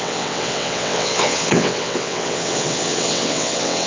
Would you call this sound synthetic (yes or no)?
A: yes